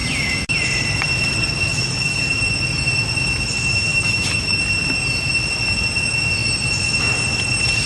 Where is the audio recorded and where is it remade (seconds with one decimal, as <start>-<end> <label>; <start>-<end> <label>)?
0.0-1.7 recorded; 1.7-2.2 remade; 2.2-3.9 recorded; 3.9-4.6 remade; 4.6-7.9 recorded